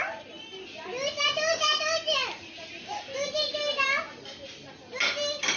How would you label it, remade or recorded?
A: recorded